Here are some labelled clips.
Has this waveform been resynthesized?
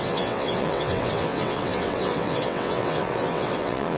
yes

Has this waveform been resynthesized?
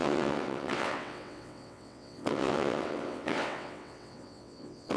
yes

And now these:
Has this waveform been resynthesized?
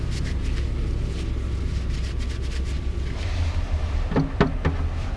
no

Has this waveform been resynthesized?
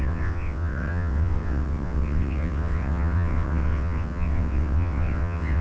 yes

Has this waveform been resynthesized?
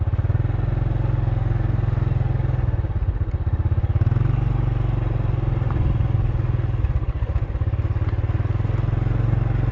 no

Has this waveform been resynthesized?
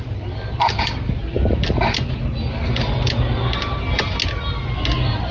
no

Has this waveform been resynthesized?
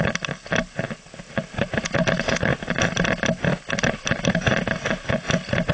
no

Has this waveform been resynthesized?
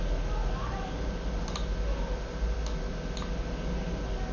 no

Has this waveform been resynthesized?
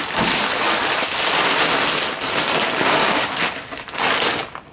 no